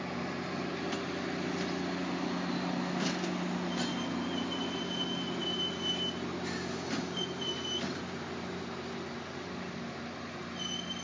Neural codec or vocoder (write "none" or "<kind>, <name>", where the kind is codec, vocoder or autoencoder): none